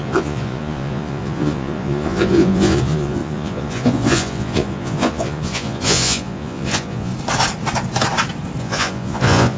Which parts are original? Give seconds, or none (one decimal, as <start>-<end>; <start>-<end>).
7.1-8.6